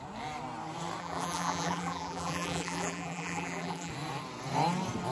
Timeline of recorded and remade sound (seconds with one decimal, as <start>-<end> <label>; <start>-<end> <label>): 0.0-1.0 recorded; 1.0-3.9 remade; 3.9-5.1 recorded